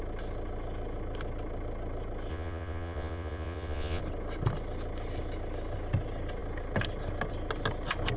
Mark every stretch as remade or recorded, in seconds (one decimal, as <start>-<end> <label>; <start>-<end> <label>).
0.0-2.3 recorded; 2.3-4.0 remade; 4.0-8.2 recorded